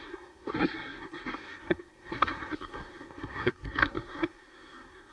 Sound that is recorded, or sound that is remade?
remade